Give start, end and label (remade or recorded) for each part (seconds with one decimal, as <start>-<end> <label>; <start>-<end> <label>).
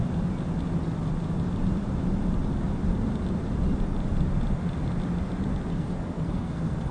0.0-5.7 recorded; 5.7-6.9 remade